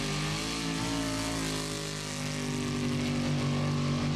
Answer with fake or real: real